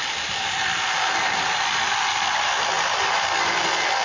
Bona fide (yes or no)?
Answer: yes